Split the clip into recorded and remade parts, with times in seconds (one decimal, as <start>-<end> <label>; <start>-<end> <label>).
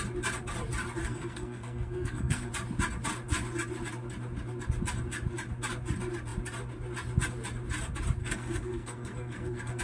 0.0-1.0 recorded; 1.0-2.5 remade; 2.5-8.2 recorded; 8.2-9.8 remade